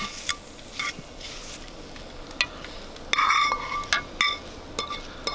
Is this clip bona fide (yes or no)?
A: yes